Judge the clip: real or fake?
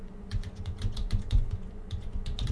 fake